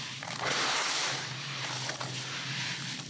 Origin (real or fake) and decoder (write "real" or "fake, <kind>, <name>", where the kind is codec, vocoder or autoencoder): real